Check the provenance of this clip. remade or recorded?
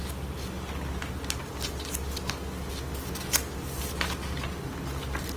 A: recorded